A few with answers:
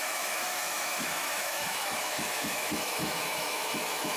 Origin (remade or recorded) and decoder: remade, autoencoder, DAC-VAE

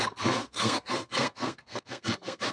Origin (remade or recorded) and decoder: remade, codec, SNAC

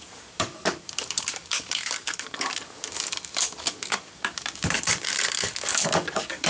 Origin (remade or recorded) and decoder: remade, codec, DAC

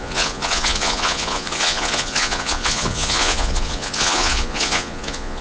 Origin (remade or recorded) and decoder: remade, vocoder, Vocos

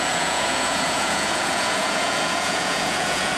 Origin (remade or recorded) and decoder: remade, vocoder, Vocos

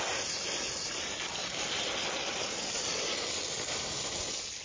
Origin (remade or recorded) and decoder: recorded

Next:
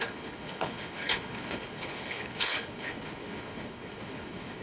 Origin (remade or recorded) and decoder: remade, codec, HILCodec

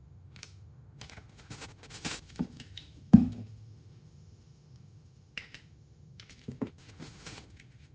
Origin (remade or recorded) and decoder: remade, autoencoder, DAC-VAE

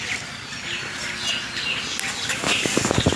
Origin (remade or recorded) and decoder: recorded